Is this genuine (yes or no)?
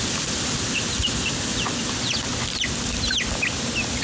yes